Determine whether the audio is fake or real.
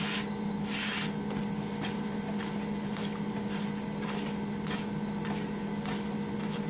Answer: real